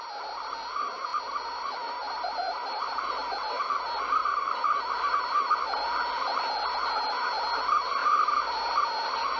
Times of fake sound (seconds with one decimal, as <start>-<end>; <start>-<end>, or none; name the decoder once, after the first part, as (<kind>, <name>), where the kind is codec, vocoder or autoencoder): none